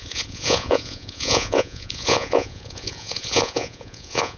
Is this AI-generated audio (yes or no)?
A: yes